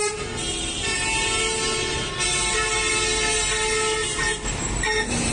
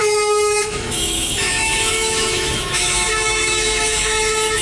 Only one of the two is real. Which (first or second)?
first